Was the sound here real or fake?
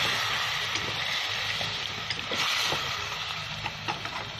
real